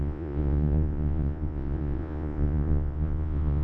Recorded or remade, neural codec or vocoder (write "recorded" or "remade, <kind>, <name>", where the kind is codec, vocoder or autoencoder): remade, vocoder, Vocos